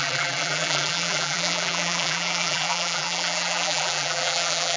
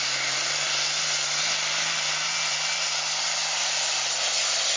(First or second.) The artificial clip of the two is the first